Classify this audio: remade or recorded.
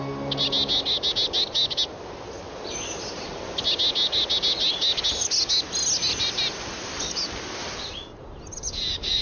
recorded